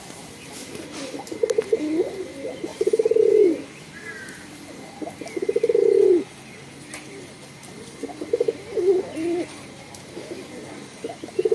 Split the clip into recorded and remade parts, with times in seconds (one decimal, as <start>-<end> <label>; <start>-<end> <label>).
0.0-2.7 recorded; 2.7-3.3 remade; 3.3-11.5 recorded